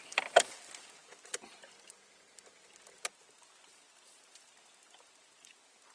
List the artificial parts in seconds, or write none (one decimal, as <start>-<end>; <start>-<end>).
none